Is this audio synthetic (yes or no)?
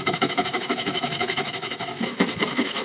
yes